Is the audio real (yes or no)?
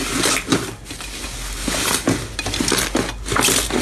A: yes